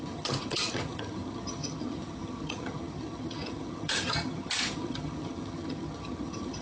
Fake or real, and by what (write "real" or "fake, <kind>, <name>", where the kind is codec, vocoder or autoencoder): fake, vocoder, HiFi-GAN